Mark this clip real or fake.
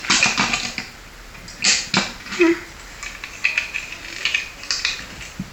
real